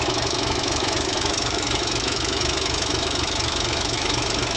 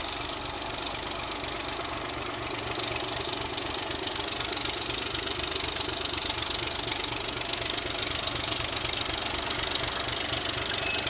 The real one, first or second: second